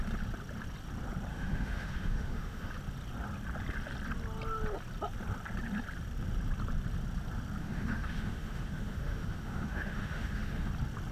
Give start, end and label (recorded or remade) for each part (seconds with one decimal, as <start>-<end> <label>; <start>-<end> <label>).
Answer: 0.0-1.3 recorded; 1.3-2.7 remade; 2.7-7.6 recorded; 7.6-10.7 remade; 10.7-11.1 recorded